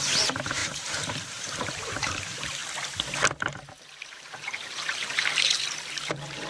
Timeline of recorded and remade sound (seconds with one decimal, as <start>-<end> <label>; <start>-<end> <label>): 0.0-2.6 remade; 2.6-4.0 recorded; 4.0-6.5 remade

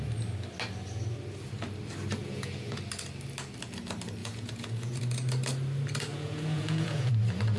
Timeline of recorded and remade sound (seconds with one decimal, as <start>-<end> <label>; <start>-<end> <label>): 0.0-2.2 recorded; 2.2-2.8 remade; 2.8-4.2 recorded; 4.2-5.0 remade; 5.0-6.1 recorded; 6.1-7.1 remade; 7.1-7.6 recorded